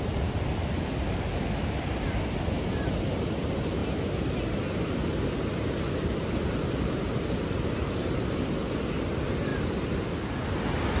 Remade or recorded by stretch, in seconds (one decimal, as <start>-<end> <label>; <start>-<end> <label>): 0.0-11.0 recorded